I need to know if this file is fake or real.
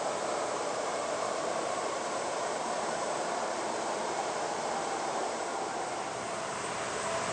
fake